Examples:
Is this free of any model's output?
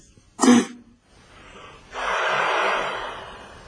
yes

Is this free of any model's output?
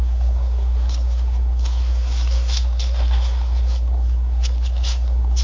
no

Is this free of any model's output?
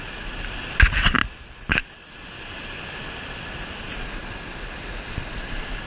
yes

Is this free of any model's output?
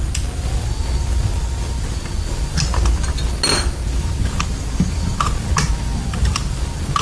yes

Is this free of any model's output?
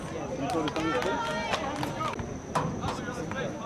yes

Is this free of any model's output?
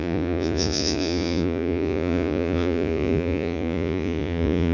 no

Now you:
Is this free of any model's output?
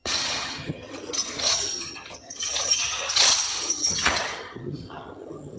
no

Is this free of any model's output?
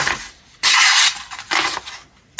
yes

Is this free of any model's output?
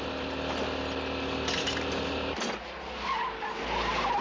yes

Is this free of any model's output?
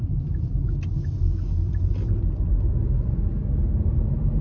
yes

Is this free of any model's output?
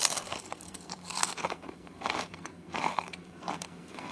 no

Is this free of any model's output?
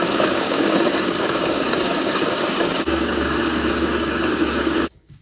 no